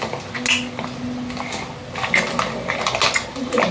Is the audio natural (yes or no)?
yes